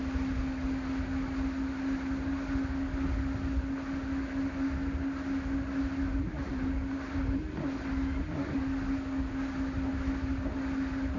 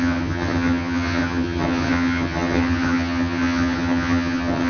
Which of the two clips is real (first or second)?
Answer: first